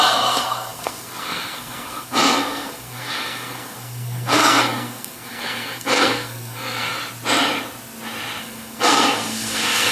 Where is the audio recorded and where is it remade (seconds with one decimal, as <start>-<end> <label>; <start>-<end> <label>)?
0.0-6.9 remade; 6.9-8.4 recorded; 8.4-9.9 remade